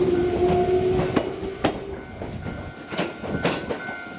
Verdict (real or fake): real